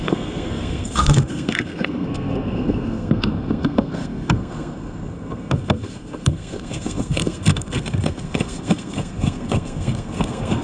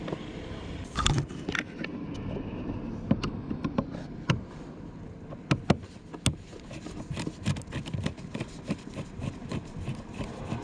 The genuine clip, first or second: second